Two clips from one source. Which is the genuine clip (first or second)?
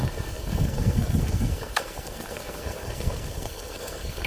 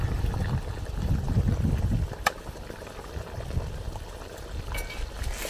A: second